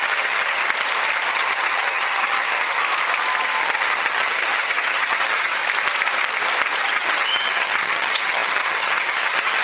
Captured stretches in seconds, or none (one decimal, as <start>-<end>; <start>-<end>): 0.6-1.3; 2.8-3.6; 5.6-6.8